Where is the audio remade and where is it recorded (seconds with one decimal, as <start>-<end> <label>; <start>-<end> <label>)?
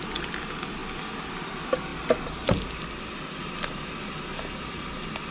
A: 0.0-5.3 recorded